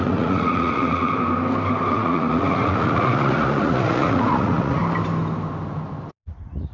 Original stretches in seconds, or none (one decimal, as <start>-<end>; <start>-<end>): 1.1-1.9; 4.8-6.1